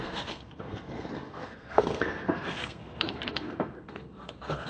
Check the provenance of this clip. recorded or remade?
remade